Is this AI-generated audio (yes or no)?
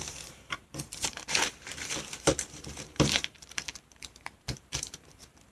yes